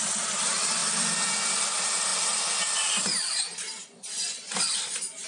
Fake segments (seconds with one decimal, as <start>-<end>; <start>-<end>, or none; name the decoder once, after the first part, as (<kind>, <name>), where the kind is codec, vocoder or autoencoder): 0.0-5.3 (vocoder, BigVGAN v2)